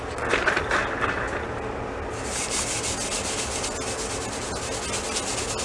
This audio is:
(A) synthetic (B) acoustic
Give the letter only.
B